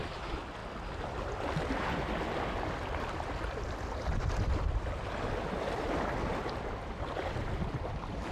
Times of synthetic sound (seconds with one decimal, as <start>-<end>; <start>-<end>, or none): none

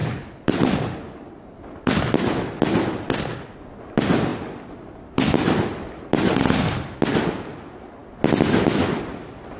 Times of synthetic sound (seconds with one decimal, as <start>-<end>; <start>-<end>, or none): none